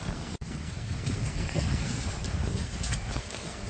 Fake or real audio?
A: fake